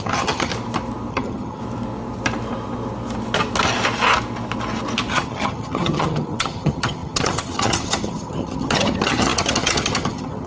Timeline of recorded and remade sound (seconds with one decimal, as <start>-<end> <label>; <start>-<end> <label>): 0.0-0.5 remade; 0.5-1.1 recorded; 1.1-1.6 remade; 1.6-5.1 recorded; 5.1-10.5 remade